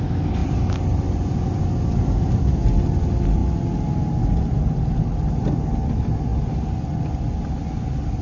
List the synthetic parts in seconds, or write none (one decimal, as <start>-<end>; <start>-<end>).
none